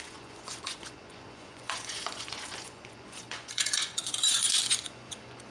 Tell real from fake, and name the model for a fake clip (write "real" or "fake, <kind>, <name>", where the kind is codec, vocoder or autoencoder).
fake, vocoder, Vocos